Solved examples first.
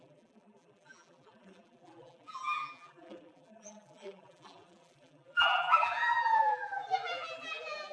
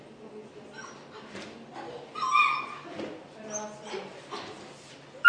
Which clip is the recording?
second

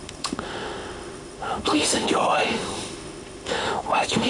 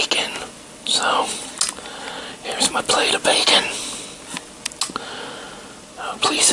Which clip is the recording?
second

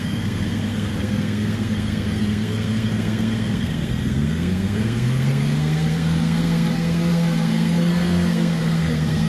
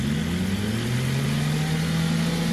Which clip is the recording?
second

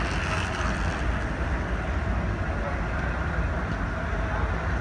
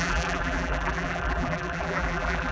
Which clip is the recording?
first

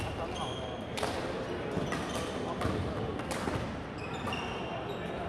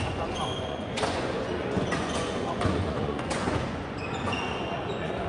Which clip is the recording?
first